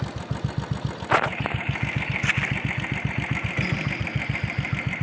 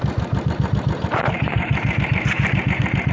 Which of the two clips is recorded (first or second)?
first